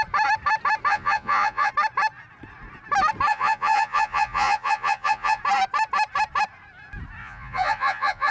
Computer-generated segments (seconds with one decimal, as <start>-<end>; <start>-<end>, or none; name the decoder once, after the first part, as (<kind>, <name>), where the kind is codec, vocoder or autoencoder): 0.9-1.7 (vocoder, Vocos); 3.3-5.4; 7.2-8.3